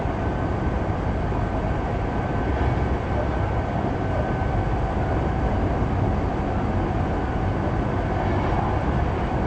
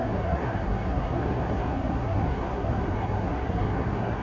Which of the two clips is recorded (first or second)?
first